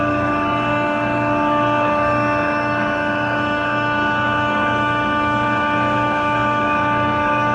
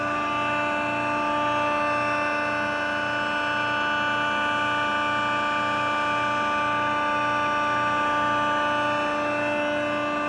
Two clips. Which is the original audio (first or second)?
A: second